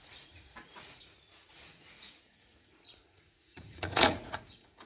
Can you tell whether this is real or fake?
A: fake